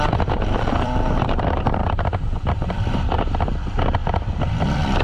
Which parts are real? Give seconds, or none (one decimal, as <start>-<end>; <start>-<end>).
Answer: 1.8-2.5; 4.0-4.6